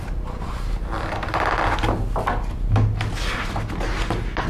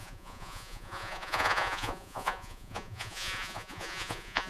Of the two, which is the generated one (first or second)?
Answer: second